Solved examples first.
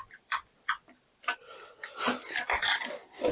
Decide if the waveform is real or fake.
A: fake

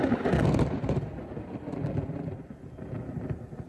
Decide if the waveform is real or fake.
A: real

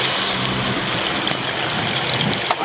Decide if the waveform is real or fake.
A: real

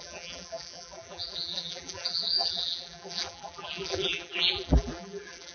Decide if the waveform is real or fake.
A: fake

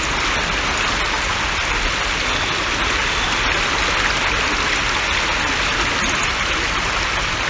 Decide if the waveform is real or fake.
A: real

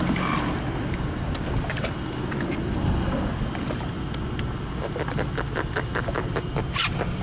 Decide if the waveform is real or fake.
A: real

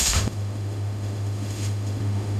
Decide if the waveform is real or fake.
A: fake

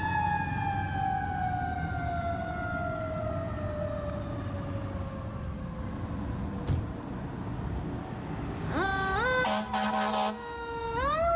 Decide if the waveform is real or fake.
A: real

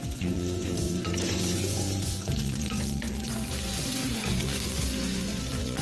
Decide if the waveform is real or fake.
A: fake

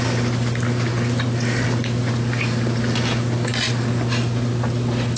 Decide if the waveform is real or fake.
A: real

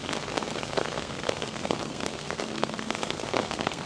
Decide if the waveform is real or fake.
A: fake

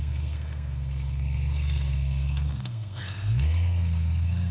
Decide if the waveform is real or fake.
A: fake